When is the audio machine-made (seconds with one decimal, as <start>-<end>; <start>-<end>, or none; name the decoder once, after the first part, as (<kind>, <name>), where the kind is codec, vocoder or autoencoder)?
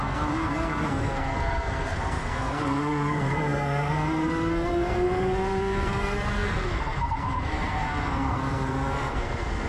0.0-9.7 (codec, SNAC)